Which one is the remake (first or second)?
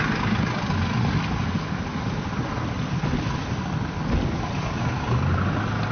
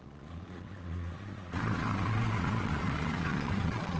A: second